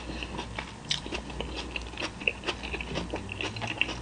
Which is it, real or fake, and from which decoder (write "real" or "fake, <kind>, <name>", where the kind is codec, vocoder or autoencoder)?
real